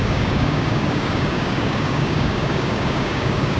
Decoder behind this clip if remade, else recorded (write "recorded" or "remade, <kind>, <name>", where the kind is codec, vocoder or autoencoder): remade, codec, DAC